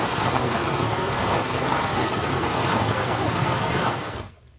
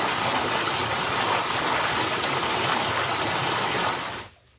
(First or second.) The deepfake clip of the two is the first